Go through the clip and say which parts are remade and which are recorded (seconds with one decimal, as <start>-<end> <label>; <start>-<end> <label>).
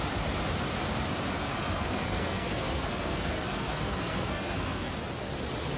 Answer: 0.0-1.4 recorded; 1.4-4.9 remade; 4.9-5.8 recorded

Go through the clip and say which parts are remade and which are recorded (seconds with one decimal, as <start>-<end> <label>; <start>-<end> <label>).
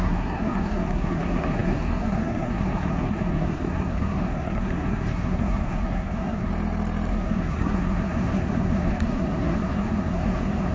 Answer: 0.0-6.5 remade; 6.5-7.1 recorded; 7.1-10.7 remade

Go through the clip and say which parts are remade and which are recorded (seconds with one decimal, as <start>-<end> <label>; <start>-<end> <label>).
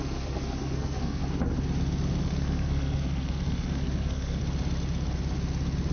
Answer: 0.0-1.2 remade; 1.2-2.2 recorded; 2.2-4.4 remade; 4.4-5.9 recorded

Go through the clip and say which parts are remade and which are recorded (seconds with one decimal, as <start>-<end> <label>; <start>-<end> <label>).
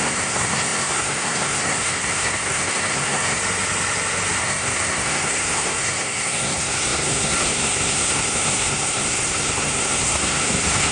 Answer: 0.0-3.4 remade; 3.4-4.4 recorded; 4.4-10.9 remade